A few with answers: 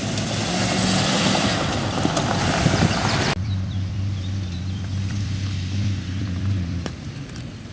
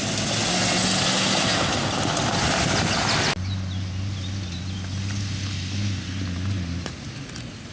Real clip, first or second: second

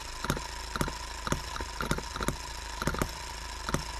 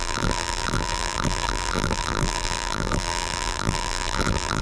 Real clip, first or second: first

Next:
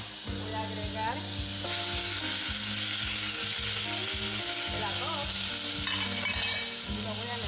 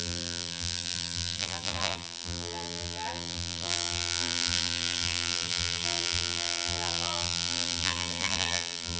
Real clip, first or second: first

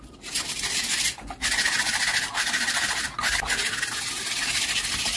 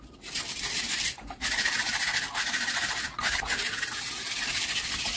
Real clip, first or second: first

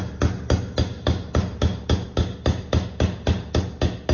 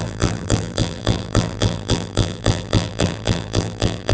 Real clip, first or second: first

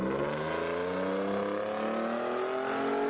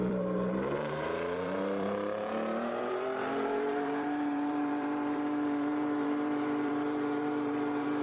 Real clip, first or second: first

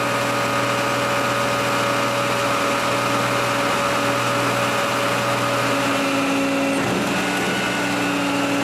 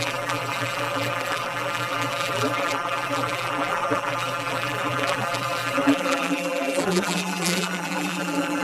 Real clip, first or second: first